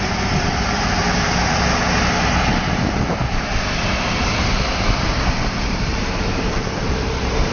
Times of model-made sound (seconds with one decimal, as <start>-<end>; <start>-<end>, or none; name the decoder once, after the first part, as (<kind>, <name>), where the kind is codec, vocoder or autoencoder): 0.0-1.0 (vocoder, BigVGAN v2); 2.5-7.5